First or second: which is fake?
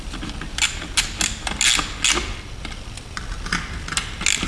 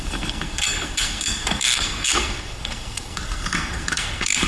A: second